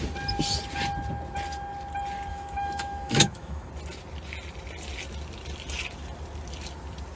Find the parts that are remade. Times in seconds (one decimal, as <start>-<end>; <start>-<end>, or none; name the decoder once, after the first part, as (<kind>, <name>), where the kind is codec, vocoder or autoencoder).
2.3-3.7 (autoencoder, DAC-VAE)